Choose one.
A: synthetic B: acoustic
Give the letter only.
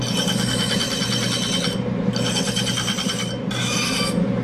B